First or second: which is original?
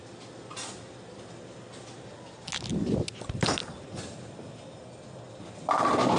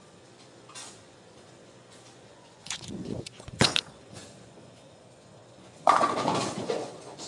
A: first